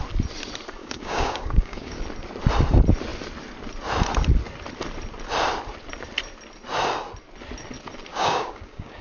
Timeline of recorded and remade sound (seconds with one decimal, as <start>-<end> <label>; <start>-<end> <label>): 0.0-0.8 recorded; 0.8-2.0 remade; 2.0-8.1 recorded; 8.1-9.0 remade